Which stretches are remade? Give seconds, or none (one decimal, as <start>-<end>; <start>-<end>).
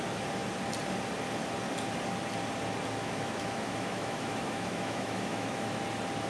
3.0-5.8